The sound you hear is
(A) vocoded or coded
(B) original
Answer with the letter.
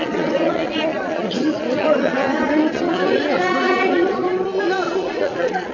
A